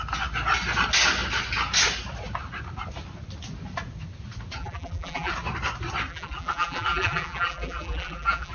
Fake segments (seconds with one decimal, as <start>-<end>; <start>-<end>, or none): 4.6-5.3; 6.1-8.5